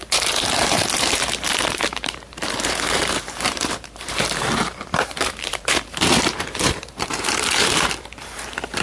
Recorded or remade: remade